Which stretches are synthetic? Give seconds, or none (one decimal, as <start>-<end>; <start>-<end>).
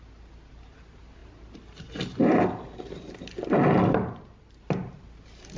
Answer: none